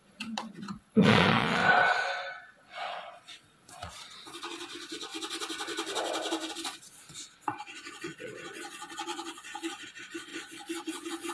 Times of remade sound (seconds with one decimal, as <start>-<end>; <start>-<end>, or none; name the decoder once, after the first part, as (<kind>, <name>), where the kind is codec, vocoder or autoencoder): 0.0-1.6 (vocoder, Vocos); 2.4-5.1; 6.5-11.3